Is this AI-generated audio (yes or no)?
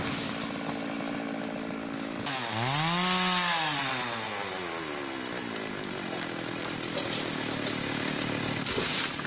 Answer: no